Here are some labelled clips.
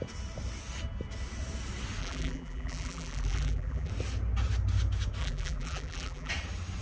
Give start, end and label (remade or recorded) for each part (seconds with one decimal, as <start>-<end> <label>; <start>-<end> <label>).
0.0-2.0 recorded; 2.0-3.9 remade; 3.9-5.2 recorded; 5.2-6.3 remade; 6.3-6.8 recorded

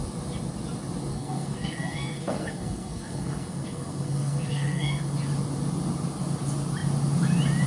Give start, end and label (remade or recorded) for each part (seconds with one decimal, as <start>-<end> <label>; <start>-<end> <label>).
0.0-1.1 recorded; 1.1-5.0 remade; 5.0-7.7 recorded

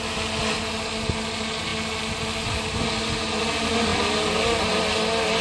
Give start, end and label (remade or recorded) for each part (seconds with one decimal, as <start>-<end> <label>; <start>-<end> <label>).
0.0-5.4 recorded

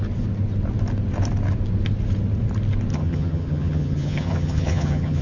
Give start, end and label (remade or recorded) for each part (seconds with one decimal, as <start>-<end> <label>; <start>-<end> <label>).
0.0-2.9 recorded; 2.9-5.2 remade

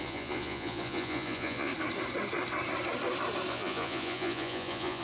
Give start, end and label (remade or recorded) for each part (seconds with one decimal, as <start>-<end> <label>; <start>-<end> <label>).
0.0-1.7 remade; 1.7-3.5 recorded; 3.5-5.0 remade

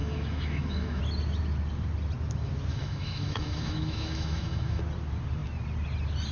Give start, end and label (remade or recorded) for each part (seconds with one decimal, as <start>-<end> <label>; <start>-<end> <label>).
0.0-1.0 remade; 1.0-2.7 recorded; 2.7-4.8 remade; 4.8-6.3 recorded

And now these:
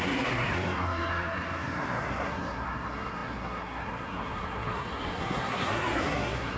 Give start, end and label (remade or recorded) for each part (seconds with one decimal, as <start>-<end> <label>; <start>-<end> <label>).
0.0-6.6 remade